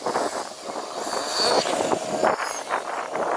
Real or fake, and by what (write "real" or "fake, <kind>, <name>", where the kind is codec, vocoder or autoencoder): real